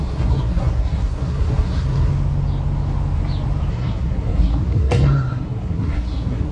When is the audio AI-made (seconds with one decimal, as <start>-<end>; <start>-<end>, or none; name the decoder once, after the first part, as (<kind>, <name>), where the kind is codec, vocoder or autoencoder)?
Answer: 0.0-2.1 (codec, SNAC); 3.7-6.5